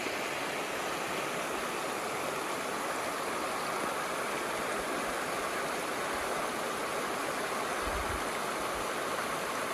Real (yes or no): yes